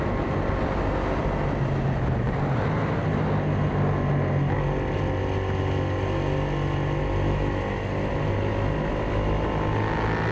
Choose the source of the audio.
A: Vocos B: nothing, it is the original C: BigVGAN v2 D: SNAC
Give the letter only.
B